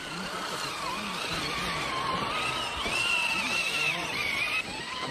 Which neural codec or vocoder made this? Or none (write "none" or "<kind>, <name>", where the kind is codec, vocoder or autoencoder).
none